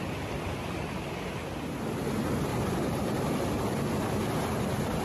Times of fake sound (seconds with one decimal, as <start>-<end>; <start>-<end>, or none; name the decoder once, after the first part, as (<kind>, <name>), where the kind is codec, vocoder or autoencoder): 2.5-3.8 (vocoder, BigVGAN v2)